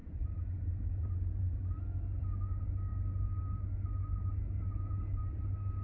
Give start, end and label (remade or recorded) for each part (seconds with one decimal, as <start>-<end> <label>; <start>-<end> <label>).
0.0-1.6 remade; 1.6-5.8 recorded